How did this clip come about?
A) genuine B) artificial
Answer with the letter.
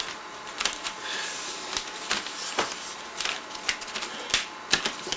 A